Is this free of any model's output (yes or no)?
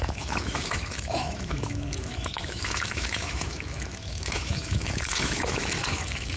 no